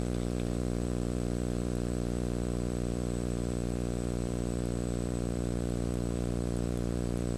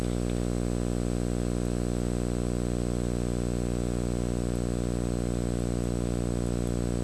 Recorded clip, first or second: second